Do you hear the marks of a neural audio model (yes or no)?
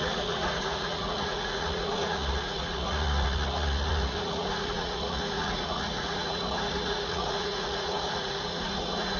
yes